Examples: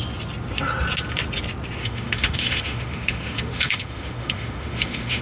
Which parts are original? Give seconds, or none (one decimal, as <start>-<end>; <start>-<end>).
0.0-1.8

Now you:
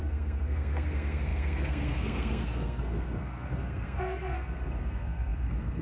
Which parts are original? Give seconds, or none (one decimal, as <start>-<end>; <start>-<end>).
none

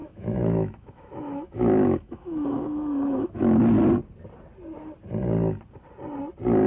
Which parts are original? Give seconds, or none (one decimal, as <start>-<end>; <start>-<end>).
3.6-6.7